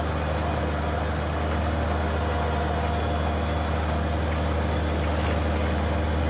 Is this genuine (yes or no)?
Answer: yes